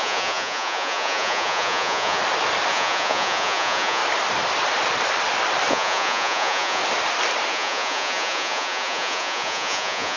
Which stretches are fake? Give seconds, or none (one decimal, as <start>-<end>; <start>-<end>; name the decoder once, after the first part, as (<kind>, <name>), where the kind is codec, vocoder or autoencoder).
0.0-2.2 (vocoder, Vocos); 2.7-4.0; 5.7-6.8; 7.5-10.2